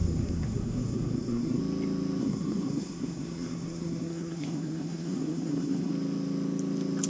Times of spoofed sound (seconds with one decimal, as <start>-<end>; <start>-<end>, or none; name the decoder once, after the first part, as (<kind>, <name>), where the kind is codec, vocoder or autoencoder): 0.0-1.6 (codec, SNAC); 2.2-5.9